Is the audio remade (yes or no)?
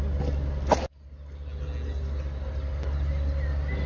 no